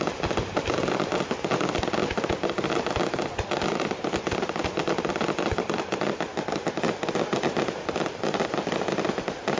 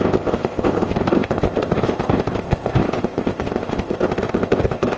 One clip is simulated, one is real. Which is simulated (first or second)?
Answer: second